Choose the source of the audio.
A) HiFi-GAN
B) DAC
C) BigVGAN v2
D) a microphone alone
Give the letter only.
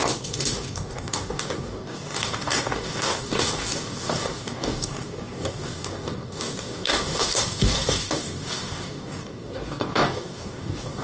B